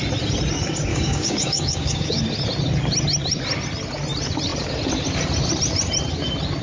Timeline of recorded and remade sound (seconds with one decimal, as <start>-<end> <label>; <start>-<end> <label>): 0.0-0.9 recorded; 0.9-2.2 remade; 2.2-6.6 recorded